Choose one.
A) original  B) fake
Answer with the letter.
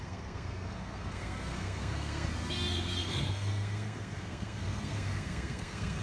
B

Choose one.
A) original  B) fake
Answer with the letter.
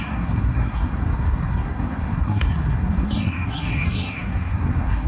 B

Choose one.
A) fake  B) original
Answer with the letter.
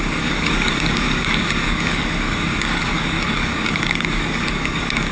A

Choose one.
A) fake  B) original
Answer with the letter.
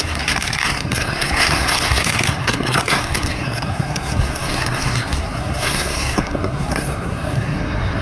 A